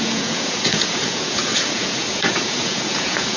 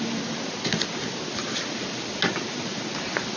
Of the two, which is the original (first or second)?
second